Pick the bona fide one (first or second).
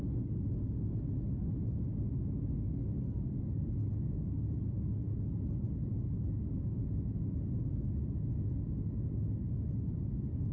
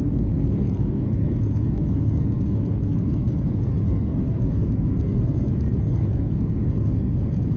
first